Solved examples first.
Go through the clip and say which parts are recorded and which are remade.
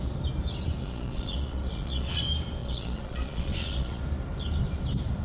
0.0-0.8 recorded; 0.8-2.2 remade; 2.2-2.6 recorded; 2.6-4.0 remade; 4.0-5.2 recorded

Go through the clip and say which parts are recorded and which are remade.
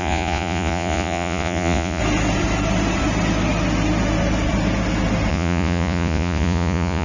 0.0-2.0 remade; 2.0-5.3 recorded; 5.3-7.0 remade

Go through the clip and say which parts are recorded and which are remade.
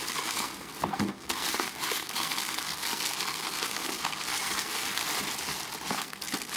0.0-5.0 remade; 5.0-5.9 recorded; 5.9-6.6 remade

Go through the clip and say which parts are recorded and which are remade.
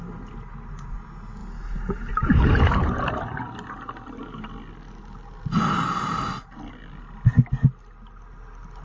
0.0-8.8 recorded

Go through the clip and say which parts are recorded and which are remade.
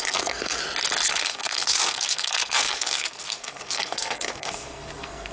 0.0-0.6 remade; 0.6-1.1 recorded; 1.1-5.3 remade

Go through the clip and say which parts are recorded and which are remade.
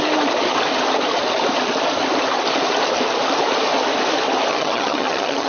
0.0-4.5 recorded; 4.5-5.5 remade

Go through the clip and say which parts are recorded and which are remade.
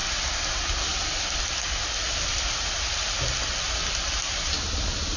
0.0-5.2 recorded